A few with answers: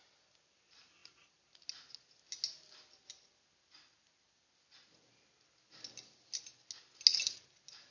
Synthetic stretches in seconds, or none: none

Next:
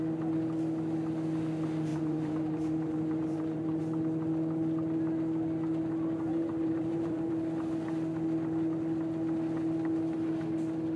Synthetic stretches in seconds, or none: 1.9-3.8 (vocoder, BigVGAN v2); 6.3-7.3

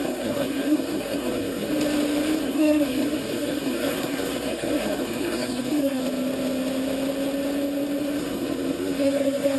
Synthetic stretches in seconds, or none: 0.0-1.7 (codec, SNAC); 2.4-6.0; 8.2-9.6

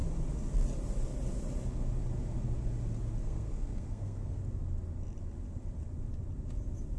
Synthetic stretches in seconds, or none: 3.2-4.4 (codec, SNAC)

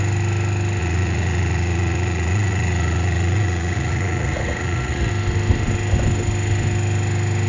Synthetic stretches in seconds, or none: 0.8-5.1 (vocoder, Vocos)

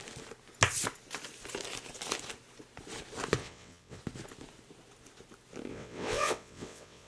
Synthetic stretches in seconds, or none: 3.4-4.0 (vocoder, WaveNeXt); 5.7-7.1

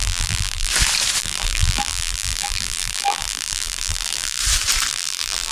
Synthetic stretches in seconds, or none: 0.0-0.7 (vocoder, BigVGAN v2); 1.2-4.4; 4.9-5.5